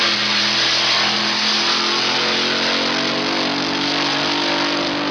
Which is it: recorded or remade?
recorded